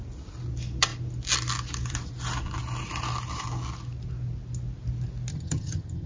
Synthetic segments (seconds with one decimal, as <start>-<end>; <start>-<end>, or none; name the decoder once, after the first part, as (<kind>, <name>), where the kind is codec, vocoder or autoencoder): 5.3-6.1 (vocoder, HiFi-GAN)